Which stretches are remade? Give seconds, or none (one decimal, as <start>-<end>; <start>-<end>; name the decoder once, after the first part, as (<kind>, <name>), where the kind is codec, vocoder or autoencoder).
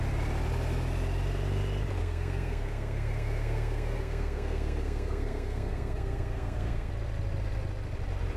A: 2.0-6.9 (codec, SNAC)